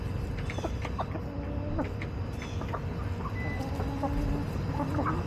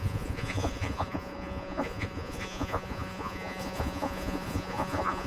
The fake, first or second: second